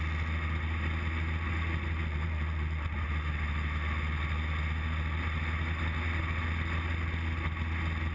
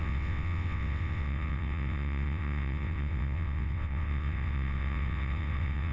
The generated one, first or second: second